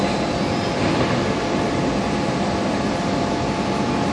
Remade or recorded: recorded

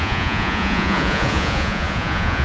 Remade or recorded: remade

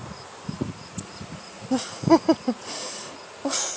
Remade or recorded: remade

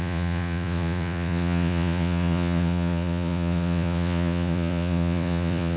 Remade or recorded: remade